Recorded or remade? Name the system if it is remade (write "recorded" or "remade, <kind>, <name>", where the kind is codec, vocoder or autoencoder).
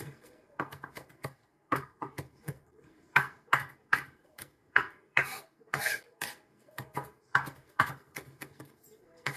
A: remade, codec, SNAC